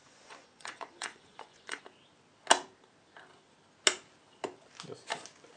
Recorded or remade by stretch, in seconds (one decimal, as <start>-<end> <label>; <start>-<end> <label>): 0.0-1.8 remade; 1.8-5.6 recorded